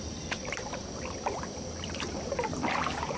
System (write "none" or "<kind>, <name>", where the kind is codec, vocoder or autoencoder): vocoder, BigVGAN v2